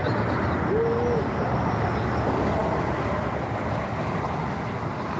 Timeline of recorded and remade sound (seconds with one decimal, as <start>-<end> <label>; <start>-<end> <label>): 0.0-5.2 recorded